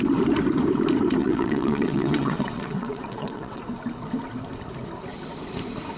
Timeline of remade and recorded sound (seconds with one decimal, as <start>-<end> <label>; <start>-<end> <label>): 0.0-1.2 recorded; 1.2-3.6 remade; 3.6-6.0 recorded